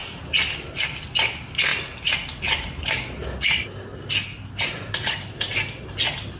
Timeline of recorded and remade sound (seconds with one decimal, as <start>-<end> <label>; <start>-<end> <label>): 0.0-6.4 recorded